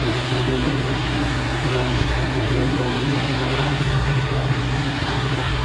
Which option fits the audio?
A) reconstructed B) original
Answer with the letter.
A